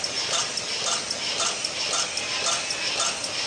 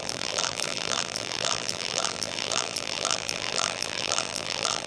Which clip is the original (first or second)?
first